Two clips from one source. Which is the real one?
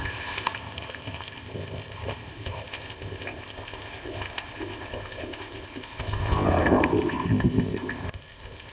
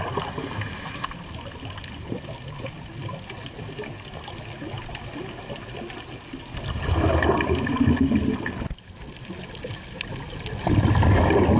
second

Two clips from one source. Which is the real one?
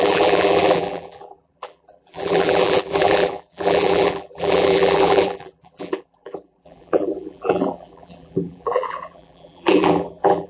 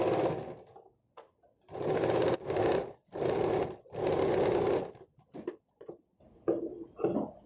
second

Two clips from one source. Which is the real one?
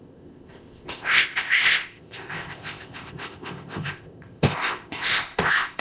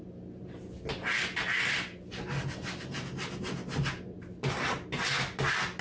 second